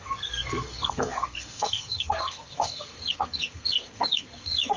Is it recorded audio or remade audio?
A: remade